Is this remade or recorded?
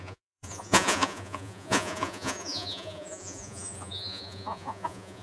remade